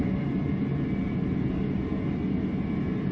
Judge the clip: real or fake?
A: real